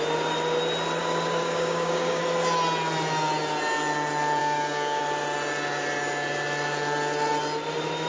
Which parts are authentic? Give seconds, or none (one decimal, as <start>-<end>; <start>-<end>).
0.0-1.0; 2.2-4.4; 5.0-8.1